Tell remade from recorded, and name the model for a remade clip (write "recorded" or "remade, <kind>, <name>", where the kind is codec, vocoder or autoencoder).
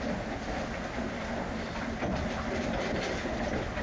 recorded